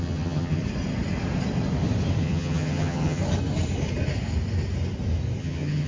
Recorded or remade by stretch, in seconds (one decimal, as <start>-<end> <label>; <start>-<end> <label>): 0.0-0.6 remade; 0.6-2.2 recorded; 2.2-3.2 remade; 3.2-5.4 recorded; 5.4-5.9 remade